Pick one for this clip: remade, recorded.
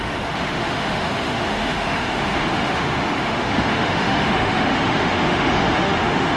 remade